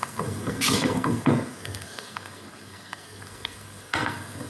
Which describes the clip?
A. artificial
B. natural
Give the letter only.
A